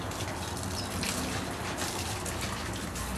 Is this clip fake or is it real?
real